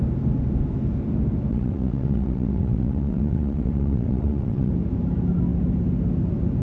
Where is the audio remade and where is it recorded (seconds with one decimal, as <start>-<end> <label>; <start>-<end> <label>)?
0.0-1.5 recorded; 1.5-4.7 remade; 4.7-6.6 recorded